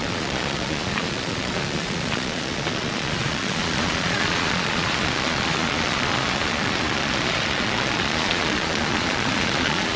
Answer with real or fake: fake